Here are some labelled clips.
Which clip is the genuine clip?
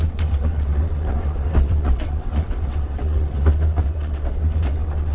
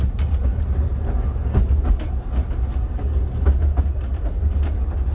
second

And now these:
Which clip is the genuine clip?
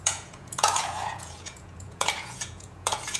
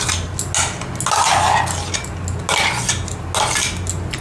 second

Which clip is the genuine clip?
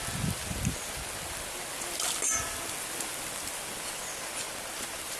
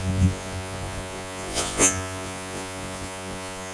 first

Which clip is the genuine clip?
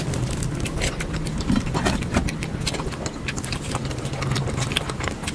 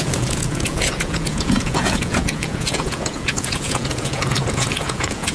first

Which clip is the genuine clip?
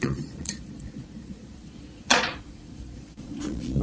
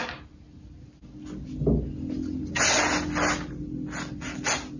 second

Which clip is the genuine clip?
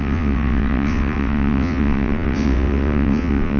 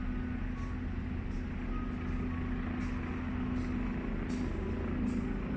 second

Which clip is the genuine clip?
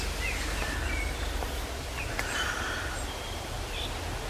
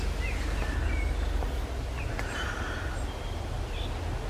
second